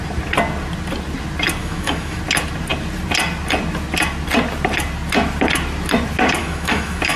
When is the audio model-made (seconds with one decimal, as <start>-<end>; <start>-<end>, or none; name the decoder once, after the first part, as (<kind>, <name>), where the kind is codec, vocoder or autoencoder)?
1.6-2.2 (autoencoder, DAC-VAE); 6.4-7.2